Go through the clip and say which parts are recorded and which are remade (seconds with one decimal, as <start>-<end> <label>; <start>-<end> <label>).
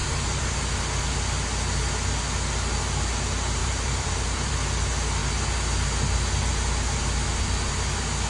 0.0-0.6 remade; 0.6-3.6 recorded; 3.6-4.5 remade; 4.5-8.3 recorded